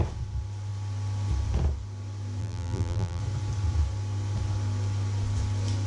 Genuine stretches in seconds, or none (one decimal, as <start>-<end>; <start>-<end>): 0.0-2.4; 3.2-5.9